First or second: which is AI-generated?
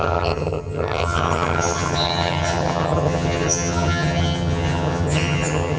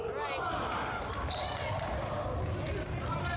first